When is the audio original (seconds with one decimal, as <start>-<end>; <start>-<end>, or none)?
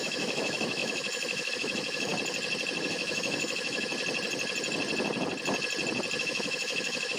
2.1-2.8; 3.9-6.2